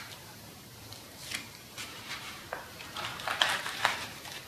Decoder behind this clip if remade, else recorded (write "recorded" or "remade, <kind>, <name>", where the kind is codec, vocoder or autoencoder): remade, vocoder, BigVGAN v2